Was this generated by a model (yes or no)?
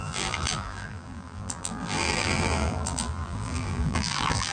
yes